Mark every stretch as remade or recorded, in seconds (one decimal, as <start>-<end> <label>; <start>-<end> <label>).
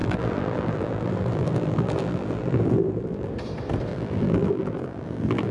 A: 0.0-3.3 remade; 3.3-3.9 recorded; 3.9-5.5 remade